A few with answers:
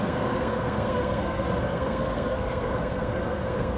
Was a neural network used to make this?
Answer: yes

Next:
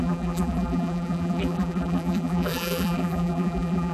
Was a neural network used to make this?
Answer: yes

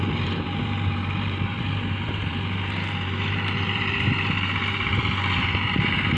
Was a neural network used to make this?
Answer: yes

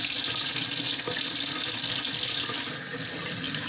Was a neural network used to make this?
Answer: no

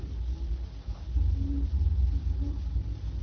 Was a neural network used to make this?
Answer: no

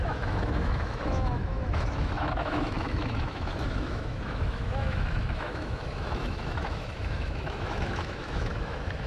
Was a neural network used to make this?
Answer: yes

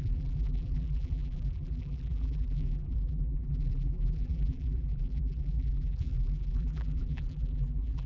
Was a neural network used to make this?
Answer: yes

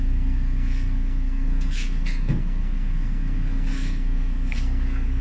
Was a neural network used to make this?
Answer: yes